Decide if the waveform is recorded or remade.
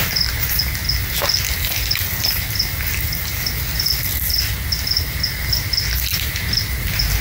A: recorded